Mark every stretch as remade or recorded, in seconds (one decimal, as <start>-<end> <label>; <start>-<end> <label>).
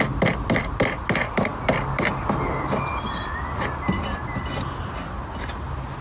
0.0-6.0 recorded